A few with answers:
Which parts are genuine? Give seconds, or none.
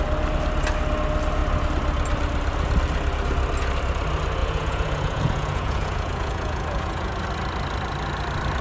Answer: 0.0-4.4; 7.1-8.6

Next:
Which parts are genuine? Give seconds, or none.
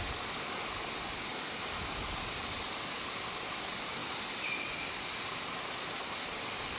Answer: 0.0-4.0; 4.6-6.8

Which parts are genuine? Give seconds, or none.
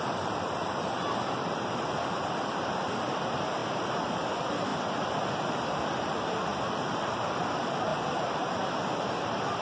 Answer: 3.6-4.1; 4.7-5.5; 6.5-7.1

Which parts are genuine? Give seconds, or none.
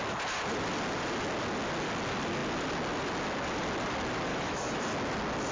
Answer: 0.0-4.3; 4.8-5.5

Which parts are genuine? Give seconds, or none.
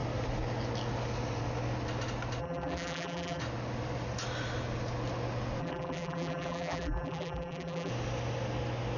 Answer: 0.0-2.4; 3.4-5.6; 7.9-9.0